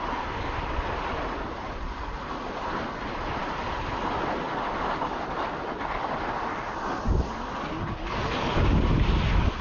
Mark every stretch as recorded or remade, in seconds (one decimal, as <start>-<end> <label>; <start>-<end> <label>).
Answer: 0.0-9.6 recorded